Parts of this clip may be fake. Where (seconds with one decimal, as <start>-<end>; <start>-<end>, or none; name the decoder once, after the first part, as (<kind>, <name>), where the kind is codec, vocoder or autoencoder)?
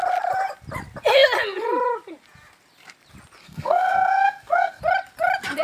3.4-4.8 (codec, SNAC)